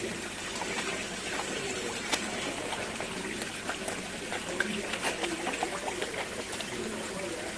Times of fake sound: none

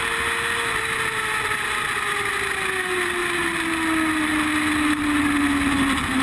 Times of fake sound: none

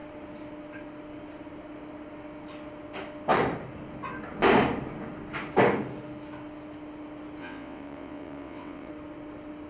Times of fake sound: 7.4-8.9

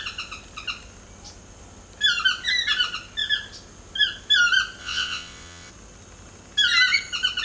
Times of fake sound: 4.8-5.7

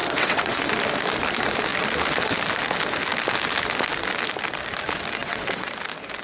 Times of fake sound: 0.0-0.7; 5.2-5.7

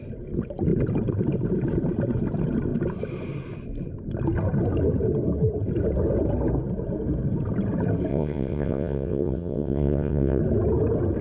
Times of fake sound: 8.1-10.4

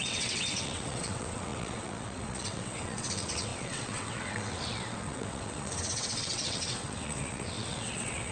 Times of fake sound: 0.0-8.3

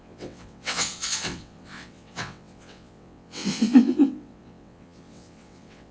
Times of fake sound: 0.0-5.9